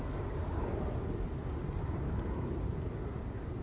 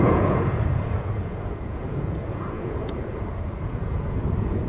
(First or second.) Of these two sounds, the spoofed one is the second